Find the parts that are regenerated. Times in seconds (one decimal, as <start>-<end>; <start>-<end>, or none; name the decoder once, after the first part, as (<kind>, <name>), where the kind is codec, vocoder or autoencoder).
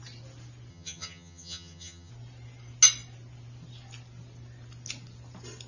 0.7-2.1 (vocoder, HiFi-GAN)